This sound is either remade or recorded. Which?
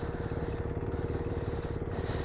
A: recorded